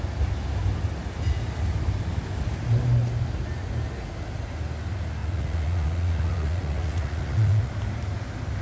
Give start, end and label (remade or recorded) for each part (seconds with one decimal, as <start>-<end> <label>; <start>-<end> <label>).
0.0-5.2 recorded; 5.2-7.7 remade; 7.7-8.6 recorded